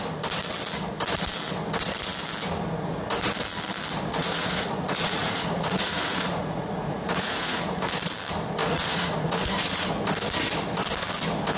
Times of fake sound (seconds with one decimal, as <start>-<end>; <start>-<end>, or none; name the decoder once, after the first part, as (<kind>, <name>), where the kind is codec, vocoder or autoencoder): 4.1-7.9 (vocoder, Vocos); 8.6-9.9